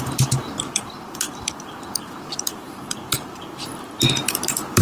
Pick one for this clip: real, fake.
fake